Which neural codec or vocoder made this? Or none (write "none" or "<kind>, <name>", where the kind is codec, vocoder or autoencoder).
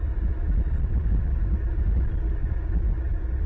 none